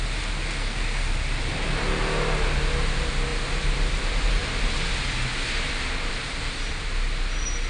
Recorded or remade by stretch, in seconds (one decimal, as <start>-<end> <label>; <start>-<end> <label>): 0.0-0.6 recorded; 0.6-1.1 remade; 1.1-7.7 recorded